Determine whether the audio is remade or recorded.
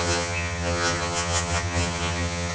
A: remade